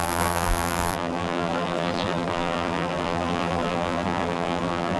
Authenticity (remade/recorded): remade